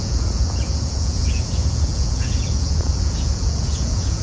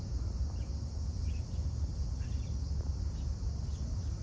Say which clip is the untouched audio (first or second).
second